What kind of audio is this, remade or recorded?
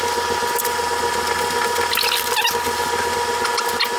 recorded